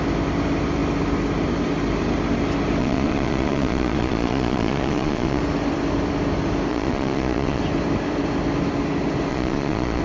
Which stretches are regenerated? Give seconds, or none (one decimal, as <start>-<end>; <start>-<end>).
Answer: 2.8-5.4; 6.7-7.6; 9.3-10.0